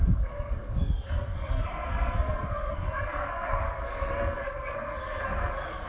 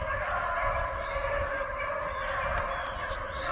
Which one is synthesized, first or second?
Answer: first